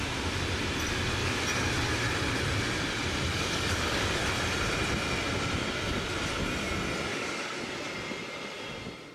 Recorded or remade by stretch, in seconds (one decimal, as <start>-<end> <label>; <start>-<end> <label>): 0.0-3.3 recorded; 3.3-4.2 remade; 4.2-7.1 recorded; 7.1-7.6 remade; 7.6-9.1 recorded